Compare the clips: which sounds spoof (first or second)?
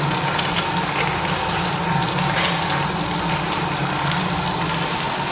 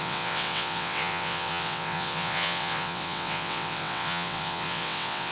second